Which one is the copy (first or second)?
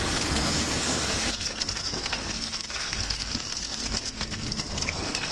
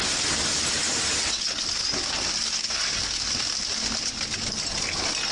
first